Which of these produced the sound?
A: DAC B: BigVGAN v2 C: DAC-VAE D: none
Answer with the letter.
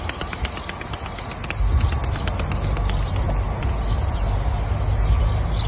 D